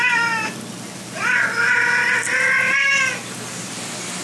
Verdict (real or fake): real